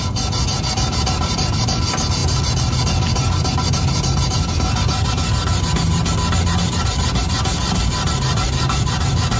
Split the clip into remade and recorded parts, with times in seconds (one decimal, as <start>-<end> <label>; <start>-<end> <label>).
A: 0.0-9.4 recorded